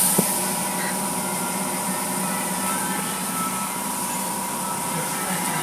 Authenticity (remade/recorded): remade